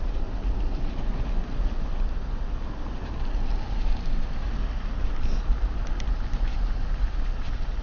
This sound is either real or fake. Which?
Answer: real